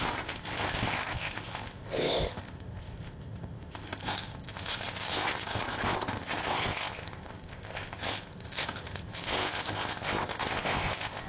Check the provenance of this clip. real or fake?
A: fake